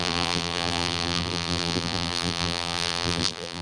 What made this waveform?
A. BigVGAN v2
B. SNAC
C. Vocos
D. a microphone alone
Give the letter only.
A